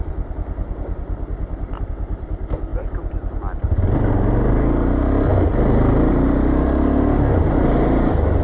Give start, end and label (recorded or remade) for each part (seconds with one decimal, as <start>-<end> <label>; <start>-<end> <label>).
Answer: 0.0-2.7 recorded; 2.7-4.1 remade; 4.1-8.4 recorded